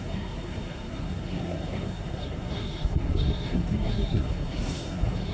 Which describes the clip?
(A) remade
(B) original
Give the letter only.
A